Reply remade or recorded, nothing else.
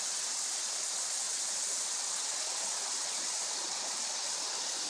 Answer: recorded